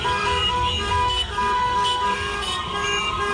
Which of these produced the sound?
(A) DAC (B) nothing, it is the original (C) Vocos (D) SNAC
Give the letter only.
A